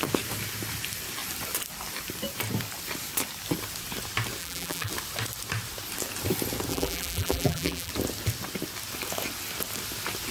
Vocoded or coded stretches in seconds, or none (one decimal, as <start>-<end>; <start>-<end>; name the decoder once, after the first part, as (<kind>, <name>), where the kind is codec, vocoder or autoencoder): 4.4-4.9 (vocoder, BigVGAN v2); 6.7-7.9